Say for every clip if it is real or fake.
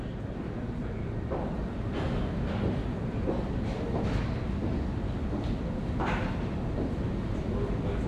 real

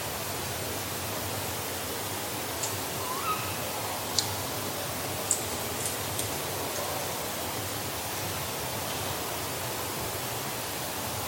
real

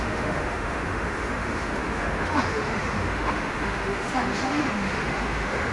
fake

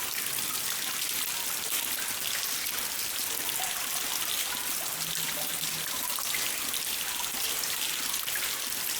real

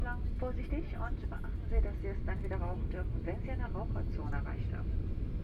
real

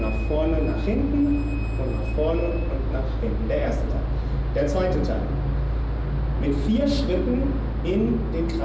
real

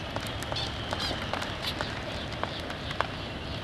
real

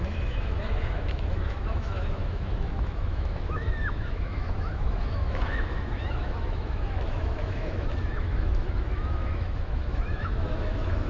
fake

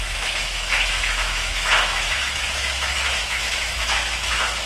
fake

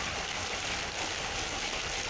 real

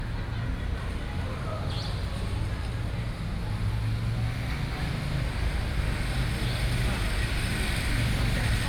real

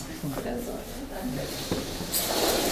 real